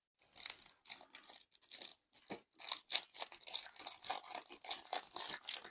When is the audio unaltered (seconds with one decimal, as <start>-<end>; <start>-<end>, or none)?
0.0-5.7